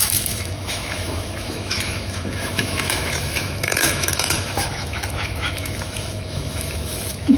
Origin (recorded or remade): remade